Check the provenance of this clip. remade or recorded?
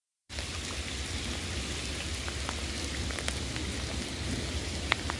recorded